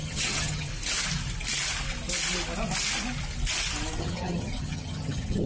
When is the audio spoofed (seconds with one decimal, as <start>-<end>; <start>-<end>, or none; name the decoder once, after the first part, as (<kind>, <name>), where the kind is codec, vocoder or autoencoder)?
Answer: 0.0-0.7 (vocoder, HiFi-GAN); 4.0-5.5